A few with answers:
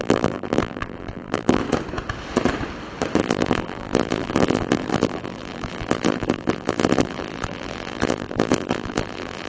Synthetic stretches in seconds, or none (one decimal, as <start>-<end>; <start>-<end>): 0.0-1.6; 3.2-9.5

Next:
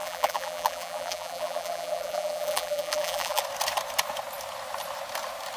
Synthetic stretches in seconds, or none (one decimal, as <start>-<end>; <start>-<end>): 0.0-3.4

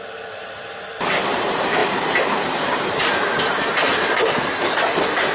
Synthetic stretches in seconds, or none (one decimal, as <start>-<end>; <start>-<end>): 1.8-4.7

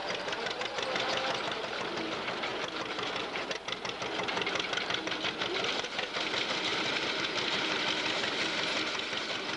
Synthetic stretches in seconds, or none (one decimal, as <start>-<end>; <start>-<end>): 0.0-0.6; 6.7-7.8